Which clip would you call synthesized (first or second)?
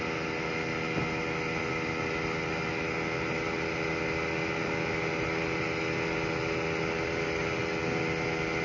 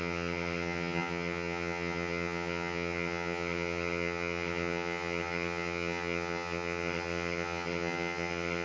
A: second